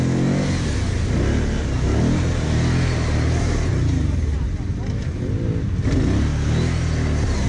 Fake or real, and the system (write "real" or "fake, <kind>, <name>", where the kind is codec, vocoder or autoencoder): real